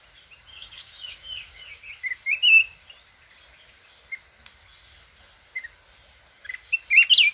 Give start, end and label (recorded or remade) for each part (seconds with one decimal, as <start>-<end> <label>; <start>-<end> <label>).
0.0-0.5 recorded; 0.5-1.9 remade; 1.9-7.3 recorded